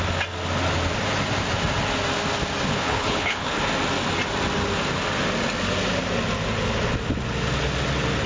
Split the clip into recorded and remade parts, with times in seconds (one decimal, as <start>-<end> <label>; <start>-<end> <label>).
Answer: 0.0-2.7 recorded; 2.7-3.6 remade; 3.6-8.3 recorded